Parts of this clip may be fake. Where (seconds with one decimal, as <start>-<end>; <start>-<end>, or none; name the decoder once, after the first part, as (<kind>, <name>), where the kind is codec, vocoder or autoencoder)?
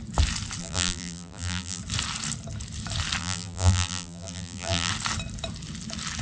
0.6-1.8 (vocoder, BigVGAN v2); 3.2-4.9